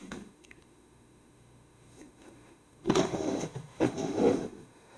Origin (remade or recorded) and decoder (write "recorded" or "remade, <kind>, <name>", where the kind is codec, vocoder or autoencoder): remade, autoencoder, DAC-VAE